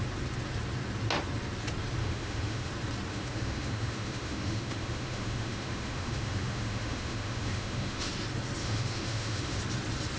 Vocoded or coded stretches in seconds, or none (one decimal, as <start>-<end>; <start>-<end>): 2.0-2.7; 3.1-8.1; 8.6-9.6